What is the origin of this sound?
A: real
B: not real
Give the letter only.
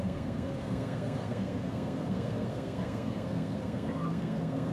B